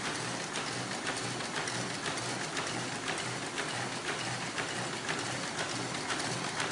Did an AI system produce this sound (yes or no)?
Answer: no